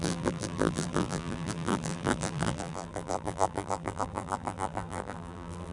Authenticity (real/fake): fake